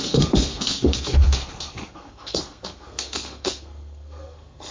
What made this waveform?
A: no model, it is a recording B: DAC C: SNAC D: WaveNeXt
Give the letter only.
C